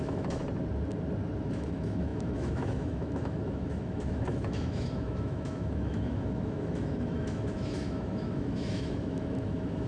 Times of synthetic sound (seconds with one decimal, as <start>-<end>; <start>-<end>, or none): 0.0-0.4; 1.4-9.9